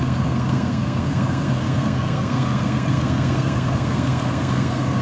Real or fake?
fake